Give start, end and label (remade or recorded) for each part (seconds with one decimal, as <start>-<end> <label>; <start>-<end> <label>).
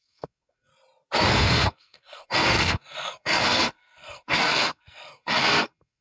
0.0-0.7 remade; 0.7-1.3 recorded; 1.3-6.0 remade